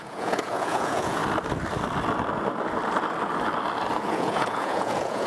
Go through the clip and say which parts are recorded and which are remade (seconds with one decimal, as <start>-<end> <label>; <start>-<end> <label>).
0.0-1.2 remade; 1.2-4.0 recorded; 4.0-5.3 remade